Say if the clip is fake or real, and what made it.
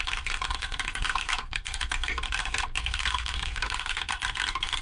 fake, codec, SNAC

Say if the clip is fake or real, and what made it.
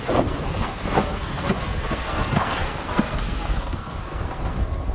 fake, codec, SNAC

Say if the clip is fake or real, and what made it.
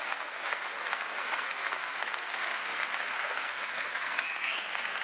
fake, codec, SNAC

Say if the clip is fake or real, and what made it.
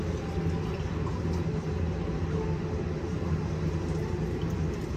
real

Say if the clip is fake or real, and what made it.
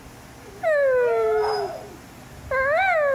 real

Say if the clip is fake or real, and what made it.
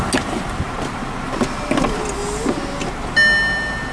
real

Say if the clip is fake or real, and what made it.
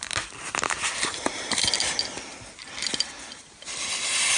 real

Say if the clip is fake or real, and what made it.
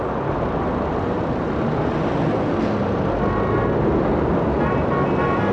real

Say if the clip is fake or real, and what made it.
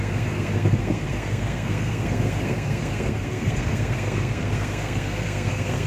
fake, codec, SNAC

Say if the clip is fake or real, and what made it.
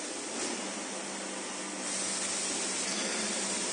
real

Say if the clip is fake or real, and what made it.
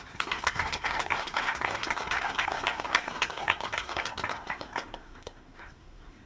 fake, codec, SNAC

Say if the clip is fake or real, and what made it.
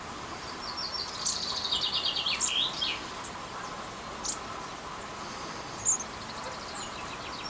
real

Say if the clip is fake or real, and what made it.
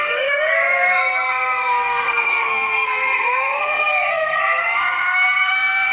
fake, codec, SNAC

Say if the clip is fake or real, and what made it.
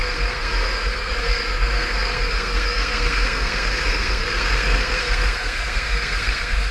fake, codec, SNAC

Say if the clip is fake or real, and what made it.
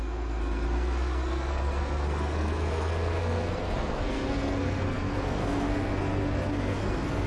fake, codec, SNAC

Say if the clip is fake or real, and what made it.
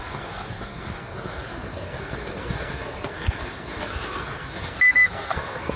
fake, codec, SNAC